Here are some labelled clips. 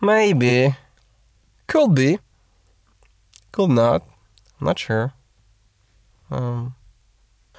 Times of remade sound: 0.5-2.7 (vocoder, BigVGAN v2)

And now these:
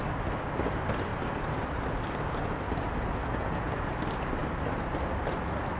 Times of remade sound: 3.3-3.9 (vocoder, Vocos)

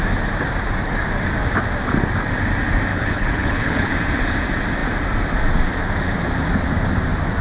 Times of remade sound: 2.9-3.9 (codec, HILCodec)

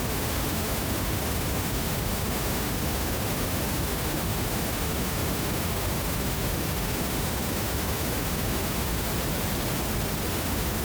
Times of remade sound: 0.0-9.1 (autoencoder, DAC-VAE); 10.3-10.8

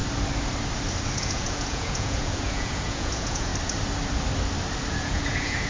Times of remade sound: 1.2-3.5 (vocoder, Vocos); 4.9-5.7